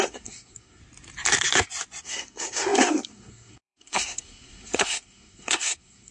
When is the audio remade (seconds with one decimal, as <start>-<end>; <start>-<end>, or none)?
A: 0.0-0.8; 2.0-6.1